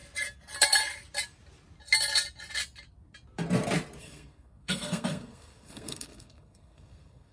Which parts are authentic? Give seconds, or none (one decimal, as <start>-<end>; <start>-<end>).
0.0-4.0